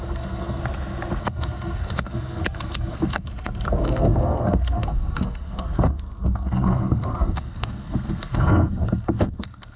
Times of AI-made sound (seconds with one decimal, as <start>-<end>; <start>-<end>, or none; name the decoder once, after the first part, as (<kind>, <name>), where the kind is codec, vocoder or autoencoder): 0.0-0.6 (codec, SNAC); 1.2-9.8